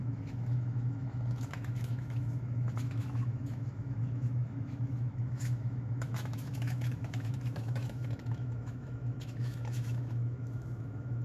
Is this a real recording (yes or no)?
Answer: no